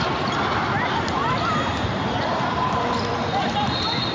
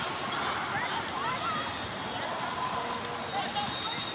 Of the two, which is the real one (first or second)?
second